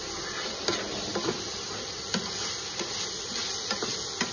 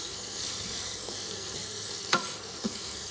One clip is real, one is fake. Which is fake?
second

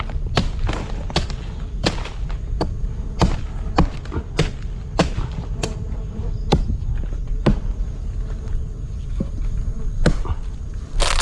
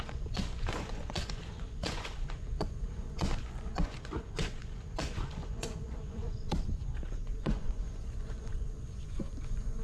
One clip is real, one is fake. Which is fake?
second